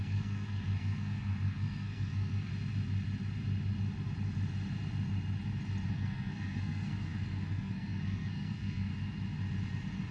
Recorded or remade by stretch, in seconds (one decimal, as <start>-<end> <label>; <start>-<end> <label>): 0.0-2.5 remade; 2.5-5.9 recorded; 5.9-8.9 remade; 8.9-10.1 recorded